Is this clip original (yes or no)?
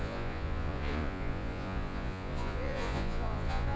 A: no